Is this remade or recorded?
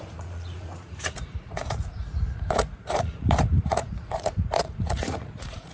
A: remade